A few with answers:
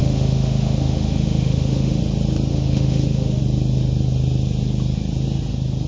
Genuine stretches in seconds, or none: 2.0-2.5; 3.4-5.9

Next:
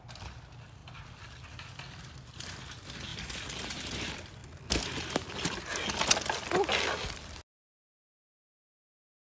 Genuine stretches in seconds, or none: 0.0-9.4

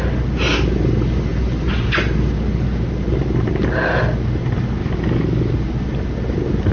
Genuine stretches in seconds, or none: 0.0-4.8; 5.5-6.7

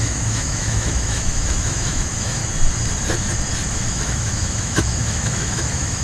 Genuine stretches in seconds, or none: 2.4-3.7

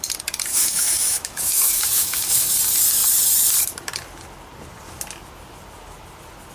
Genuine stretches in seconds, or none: 0.0-0.5; 2.4-6.5

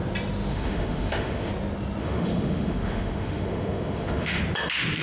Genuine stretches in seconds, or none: 0.0-0.5; 1.5-2.0; 4.4-5.0

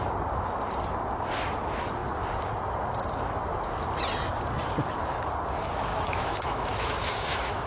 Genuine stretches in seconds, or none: 0.0-5.9

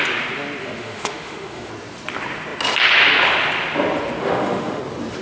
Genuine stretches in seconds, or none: 0.0-0.6; 1.7-4.2; 4.8-5.2